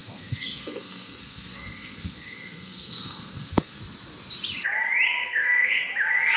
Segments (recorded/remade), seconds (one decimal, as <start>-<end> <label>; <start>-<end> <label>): 0.0-3.8 remade; 3.8-5.2 recorded; 5.2-5.8 remade; 5.8-6.4 recorded